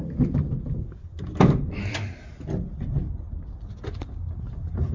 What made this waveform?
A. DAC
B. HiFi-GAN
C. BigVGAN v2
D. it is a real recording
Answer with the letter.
D